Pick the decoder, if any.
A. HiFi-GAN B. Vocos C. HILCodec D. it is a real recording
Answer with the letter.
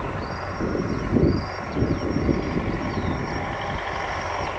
D